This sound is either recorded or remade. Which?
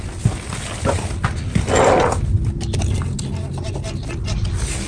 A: recorded